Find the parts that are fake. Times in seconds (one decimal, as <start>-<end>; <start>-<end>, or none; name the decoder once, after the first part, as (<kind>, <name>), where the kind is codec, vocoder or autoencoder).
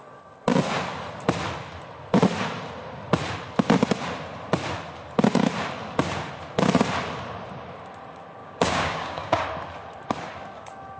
8.4-9.4 (codec, DAC)